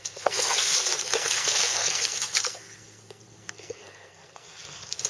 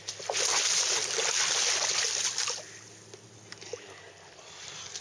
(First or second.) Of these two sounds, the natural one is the second